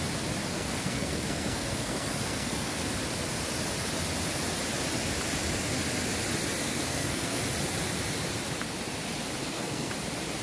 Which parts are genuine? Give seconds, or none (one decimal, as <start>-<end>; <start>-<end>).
0.0-0.5; 2.8-6.6; 7.4-9.4; 9.9-10.4